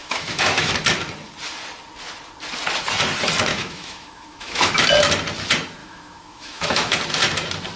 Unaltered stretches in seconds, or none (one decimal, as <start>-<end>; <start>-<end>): 0.7-3.5; 4.7-5.8; 7.0-7.8